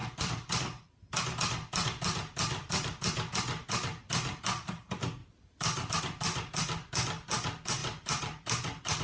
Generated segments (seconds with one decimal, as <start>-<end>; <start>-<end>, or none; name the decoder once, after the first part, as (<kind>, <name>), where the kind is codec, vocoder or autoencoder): 0.0-1.0 (vocoder, BigVGAN v2); 1.5-2.9; 5.2-6.0; 7.8-9.0